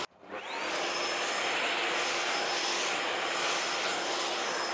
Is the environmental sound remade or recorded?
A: recorded